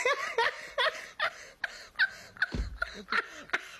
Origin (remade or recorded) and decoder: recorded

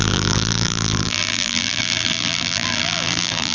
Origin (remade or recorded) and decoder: remade, vocoder, BigVGAN v2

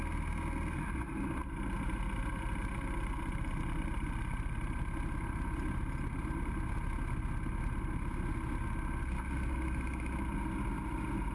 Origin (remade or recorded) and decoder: recorded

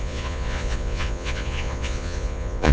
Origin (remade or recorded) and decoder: remade, vocoder, Vocos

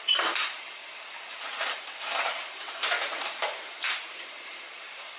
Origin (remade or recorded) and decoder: remade, vocoder, BigVGAN v2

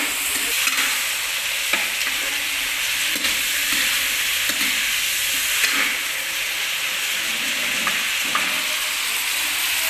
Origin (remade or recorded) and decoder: recorded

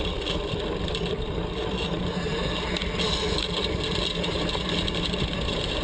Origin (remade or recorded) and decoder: recorded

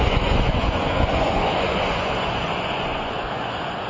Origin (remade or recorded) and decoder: remade, vocoder, Vocos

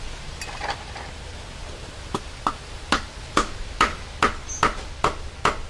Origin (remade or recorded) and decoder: recorded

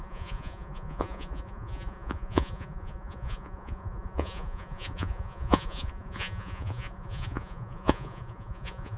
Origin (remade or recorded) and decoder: remade, vocoder, Vocos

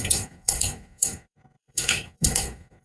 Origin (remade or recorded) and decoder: remade, codec, SNAC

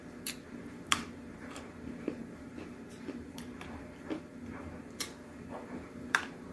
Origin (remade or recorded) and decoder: remade, vocoder, BigVGAN v2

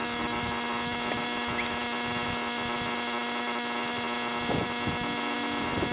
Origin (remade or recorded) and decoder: recorded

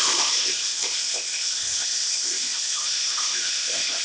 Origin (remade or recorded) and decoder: remade, codec, ZipCodec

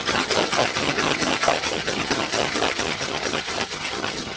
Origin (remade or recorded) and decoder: remade, vocoder, HiFi-GAN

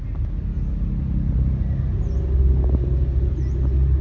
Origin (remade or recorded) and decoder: recorded